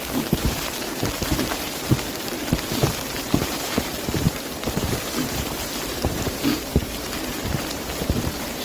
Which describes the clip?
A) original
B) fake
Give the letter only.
B